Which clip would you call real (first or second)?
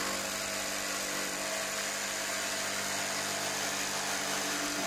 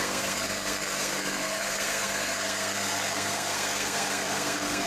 first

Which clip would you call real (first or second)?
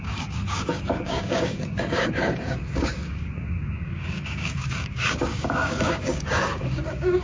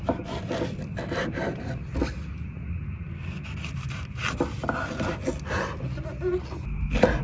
second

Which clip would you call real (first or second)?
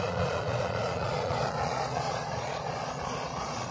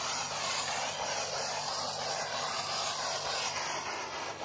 second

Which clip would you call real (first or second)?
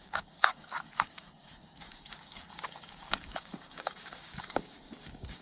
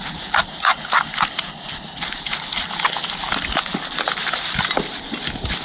second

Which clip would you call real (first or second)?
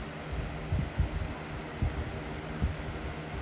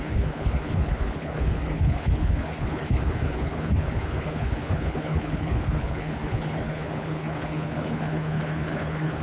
first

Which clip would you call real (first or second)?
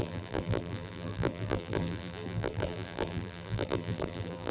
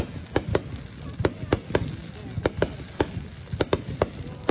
second